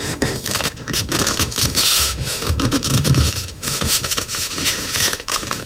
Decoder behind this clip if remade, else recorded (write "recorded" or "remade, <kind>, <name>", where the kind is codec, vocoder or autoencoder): remade, autoencoder, DAC-VAE